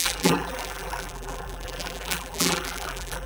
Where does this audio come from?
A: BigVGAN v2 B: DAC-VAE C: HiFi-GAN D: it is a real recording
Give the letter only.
A